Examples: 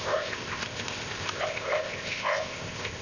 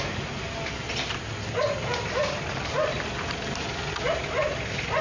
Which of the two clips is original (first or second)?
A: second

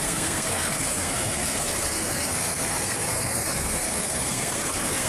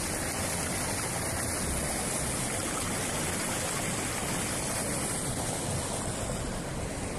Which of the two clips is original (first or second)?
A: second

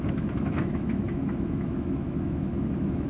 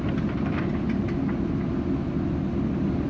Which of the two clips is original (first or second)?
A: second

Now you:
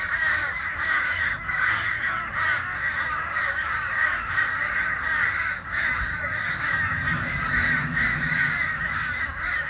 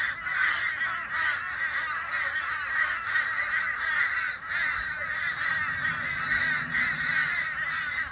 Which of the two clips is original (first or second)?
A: second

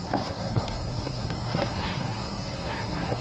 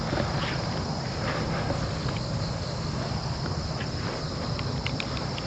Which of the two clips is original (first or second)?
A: second